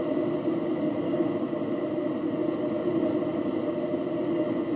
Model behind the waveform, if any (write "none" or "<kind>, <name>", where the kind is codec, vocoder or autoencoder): none